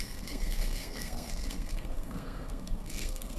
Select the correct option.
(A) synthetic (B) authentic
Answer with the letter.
A